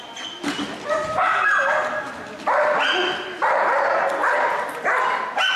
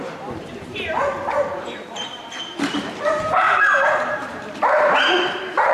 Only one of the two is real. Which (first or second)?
first